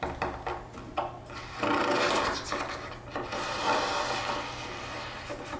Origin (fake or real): real